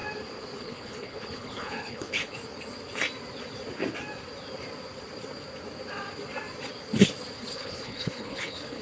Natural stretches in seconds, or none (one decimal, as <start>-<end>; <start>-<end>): 0.0-0.6; 2.4-7.5